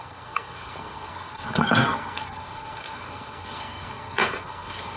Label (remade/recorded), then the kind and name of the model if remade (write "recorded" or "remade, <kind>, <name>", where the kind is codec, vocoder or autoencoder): remade, codec, SNAC